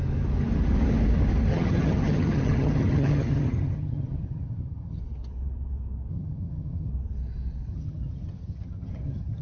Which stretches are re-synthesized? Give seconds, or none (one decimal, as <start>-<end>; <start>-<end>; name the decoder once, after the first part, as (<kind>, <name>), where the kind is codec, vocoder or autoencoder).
1.5-5.0 (vocoder, HiFi-GAN); 6.1-6.9; 7.7-9.4